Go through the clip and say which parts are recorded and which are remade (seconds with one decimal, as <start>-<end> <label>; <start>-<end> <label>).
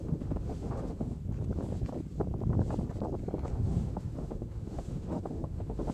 0.0-1.2 remade; 1.2-3.5 recorded; 3.5-5.9 remade